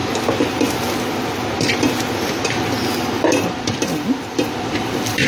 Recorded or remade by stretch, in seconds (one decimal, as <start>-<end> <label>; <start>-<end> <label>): 0.0-3.2 recorded; 3.2-5.3 remade

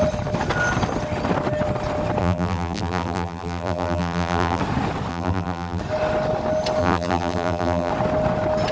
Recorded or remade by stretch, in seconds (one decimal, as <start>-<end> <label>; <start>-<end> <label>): 0.0-2.2 recorded; 2.2-4.6 remade; 4.6-5.1 recorded; 5.1-5.8 remade; 5.8-6.8 recorded; 6.8-7.9 remade; 7.9-8.7 recorded